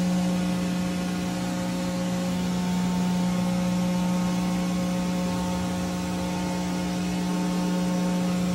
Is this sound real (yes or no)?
yes